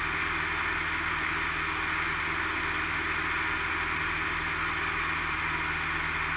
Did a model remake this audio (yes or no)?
no